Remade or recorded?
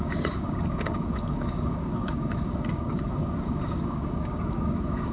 remade